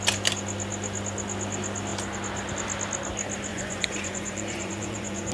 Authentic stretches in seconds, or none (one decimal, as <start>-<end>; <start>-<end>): 0.0-3.5